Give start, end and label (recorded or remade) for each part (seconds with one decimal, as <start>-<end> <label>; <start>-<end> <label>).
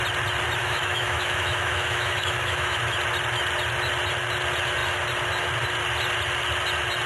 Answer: 0.0-0.6 recorded; 0.6-2.8 remade; 2.8-7.1 recorded